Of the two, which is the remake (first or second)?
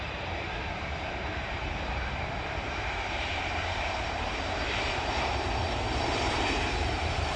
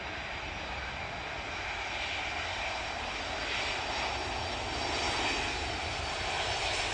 first